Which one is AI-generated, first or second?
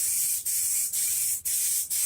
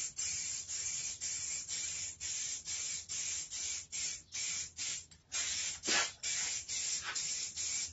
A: first